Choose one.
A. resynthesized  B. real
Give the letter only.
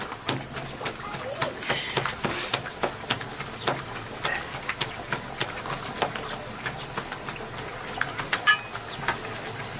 B